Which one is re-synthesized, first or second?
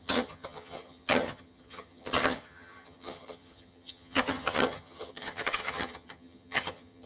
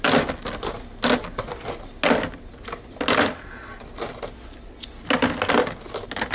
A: first